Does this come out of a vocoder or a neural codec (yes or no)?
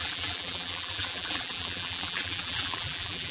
yes